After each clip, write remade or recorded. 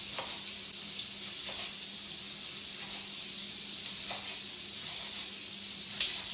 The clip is recorded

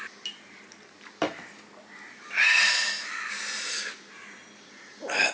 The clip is recorded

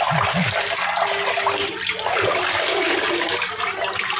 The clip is recorded